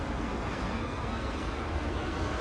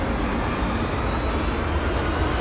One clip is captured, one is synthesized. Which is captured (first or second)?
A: second